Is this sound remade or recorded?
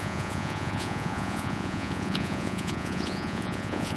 remade